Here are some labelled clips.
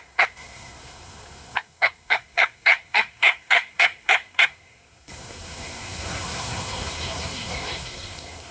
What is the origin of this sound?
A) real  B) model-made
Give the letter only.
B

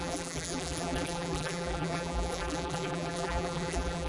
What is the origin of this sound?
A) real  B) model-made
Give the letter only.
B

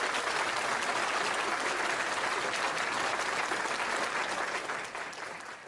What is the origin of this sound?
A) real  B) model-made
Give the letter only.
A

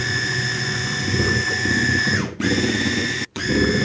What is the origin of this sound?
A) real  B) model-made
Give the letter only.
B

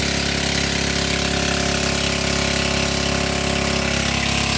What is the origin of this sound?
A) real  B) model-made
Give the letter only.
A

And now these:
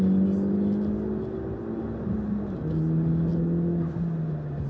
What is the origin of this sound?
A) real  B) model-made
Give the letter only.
A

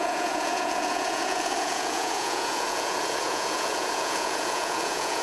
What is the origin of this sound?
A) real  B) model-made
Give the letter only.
B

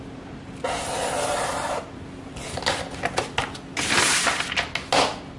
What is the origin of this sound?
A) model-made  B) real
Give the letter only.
B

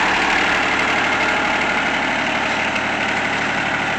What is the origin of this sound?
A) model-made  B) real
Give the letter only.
B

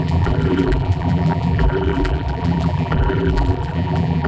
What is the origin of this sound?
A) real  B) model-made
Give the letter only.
B